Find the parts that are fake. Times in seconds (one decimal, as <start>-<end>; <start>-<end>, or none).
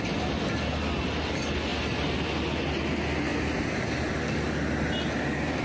none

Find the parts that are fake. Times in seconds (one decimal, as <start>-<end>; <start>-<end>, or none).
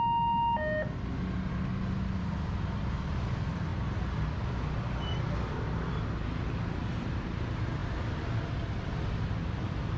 none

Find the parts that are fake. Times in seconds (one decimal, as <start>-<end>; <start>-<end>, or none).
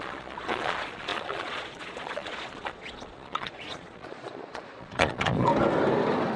0.0-5.5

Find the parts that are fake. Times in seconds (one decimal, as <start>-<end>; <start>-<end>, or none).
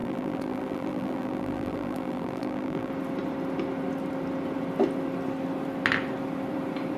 0.0-2.9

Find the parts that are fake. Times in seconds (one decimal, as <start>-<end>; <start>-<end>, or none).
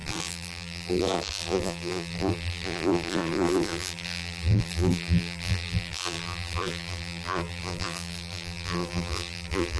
0.0-9.8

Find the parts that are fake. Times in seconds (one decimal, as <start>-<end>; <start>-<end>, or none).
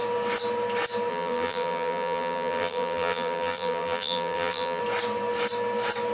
1.1-4.8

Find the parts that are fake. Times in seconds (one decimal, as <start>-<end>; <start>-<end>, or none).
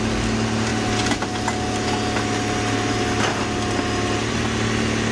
none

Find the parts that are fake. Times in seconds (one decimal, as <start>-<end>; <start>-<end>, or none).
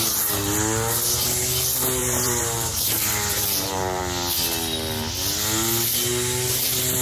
2.0-4.0